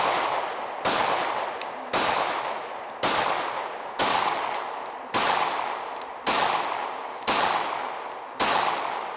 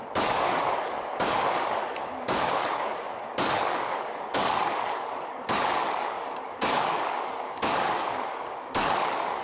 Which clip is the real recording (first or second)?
first